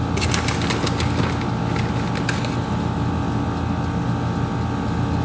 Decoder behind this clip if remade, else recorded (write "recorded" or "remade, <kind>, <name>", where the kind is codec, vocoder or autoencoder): recorded